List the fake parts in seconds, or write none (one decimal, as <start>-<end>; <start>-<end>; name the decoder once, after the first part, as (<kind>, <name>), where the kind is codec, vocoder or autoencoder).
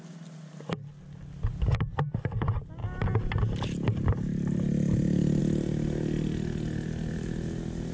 none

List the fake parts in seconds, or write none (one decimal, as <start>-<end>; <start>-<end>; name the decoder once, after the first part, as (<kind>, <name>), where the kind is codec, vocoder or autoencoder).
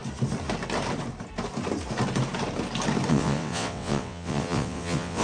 3.1-5.2 (vocoder, WaveNeXt)